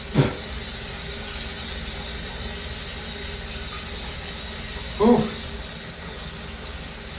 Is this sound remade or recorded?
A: recorded